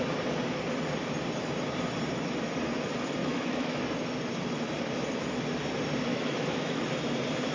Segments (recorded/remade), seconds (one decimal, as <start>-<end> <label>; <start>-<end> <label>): 0.0-3.2 recorded; 3.2-3.8 remade; 3.8-6.1 recorded; 6.1-6.8 remade; 6.8-7.5 recorded